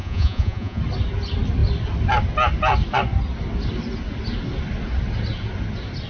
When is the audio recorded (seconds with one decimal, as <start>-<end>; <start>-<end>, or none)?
0.8-6.1